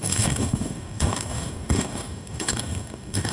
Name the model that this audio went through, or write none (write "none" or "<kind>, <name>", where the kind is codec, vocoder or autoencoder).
codec, DAC